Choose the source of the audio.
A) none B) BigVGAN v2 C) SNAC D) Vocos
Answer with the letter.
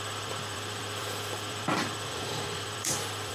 B